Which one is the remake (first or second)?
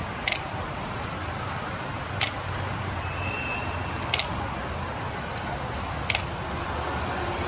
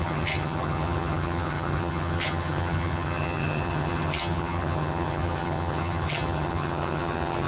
second